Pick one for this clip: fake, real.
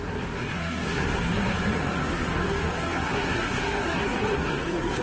fake